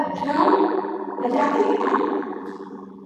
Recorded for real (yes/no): no